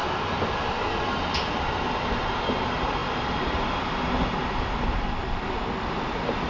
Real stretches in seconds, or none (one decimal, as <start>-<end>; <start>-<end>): 0.0-6.5